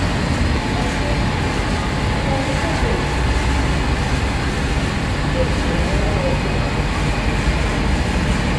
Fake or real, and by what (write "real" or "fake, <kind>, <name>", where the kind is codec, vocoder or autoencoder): real